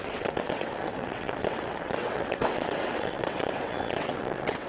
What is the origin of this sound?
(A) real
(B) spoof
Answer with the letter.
B